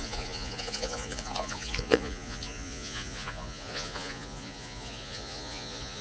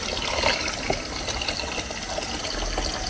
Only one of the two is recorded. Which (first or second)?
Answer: second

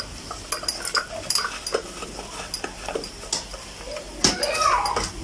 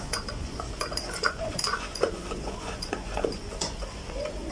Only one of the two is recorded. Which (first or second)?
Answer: first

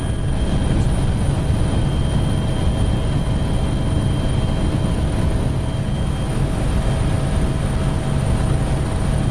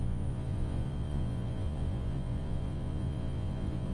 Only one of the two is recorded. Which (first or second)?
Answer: first